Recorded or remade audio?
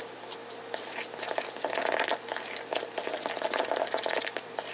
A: recorded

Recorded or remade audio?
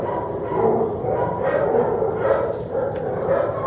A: recorded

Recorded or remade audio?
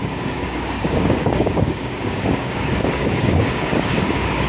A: remade